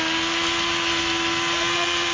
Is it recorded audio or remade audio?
recorded